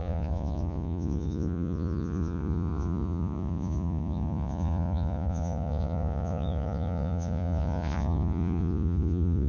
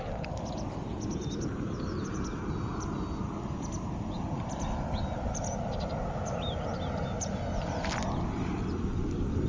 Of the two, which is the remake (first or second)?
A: first